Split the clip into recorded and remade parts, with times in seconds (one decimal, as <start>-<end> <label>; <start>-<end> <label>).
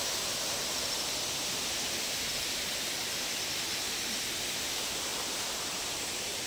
0.0-0.6 remade; 0.6-4.5 recorded; 4.5-5.1 remade; 5.1-5.6 recorded; 5.6-6.5 remade